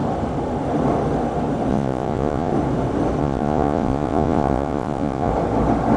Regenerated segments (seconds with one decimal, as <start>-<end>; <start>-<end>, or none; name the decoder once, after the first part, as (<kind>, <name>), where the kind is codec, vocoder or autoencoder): 1.7-2.5 (vocoder, Vocos); 3.2-5.3